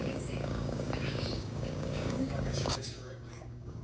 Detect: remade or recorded remade